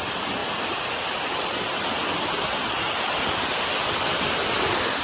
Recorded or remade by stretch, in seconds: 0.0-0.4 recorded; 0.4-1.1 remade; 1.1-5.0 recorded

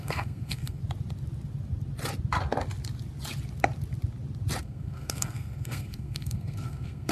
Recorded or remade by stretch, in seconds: 0.0-0.8 remade; 0.8-4.6 recorded; 4.6-7.1 remade

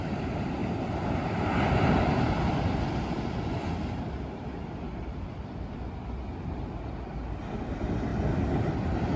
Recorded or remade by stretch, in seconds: 0.0-9.2 recorded

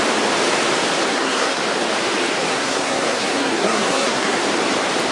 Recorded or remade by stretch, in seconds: 0.0-1.1 recorded; 1.1-1.6 remade; 1.6-2.5 recorded; 2.5-4.4 remade; 4.4-5.1 recorded

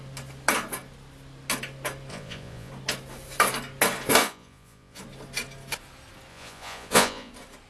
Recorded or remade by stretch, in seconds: 0.0-2.1 recorded; 2.1-2.7 remade; 2.7-4.2 recorded; 4.2-5.0 remade; 5.0-6.3 recorded; 6.3-7.3 remade; 7.3-7.7 recorded

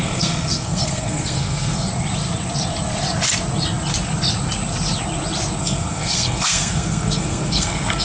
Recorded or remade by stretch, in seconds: 0.0-1.9 remade; 1.9-5.6 recorded; 5.6-8.0 remade